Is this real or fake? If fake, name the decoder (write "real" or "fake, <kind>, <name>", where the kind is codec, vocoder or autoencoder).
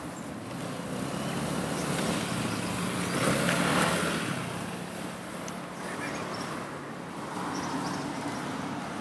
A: real